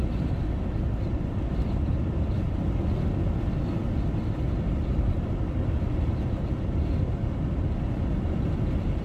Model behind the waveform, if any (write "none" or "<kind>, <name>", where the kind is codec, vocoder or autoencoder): none